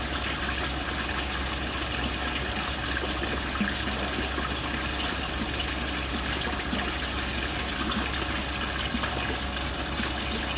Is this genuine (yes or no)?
yes